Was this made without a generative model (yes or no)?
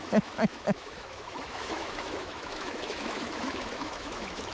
no